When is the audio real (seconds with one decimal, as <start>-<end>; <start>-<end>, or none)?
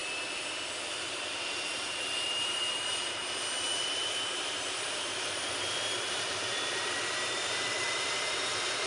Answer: 0.0-0.9